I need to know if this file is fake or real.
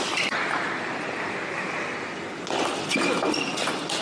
real